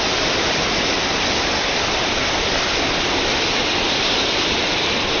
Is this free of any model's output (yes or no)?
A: yes